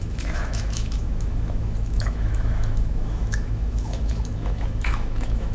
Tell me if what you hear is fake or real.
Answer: fake